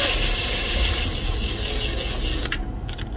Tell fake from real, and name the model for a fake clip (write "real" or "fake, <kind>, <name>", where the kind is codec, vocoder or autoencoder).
real